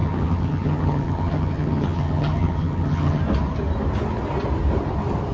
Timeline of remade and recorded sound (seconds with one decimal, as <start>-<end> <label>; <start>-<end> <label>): 0.0-3.2 remade; 3.2-5.3 recorded